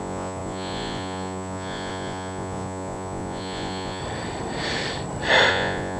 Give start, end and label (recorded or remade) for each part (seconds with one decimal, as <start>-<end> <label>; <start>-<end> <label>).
0.0-4.0 remade; 4.0-5.5 recorded; 5.5-6.0 remade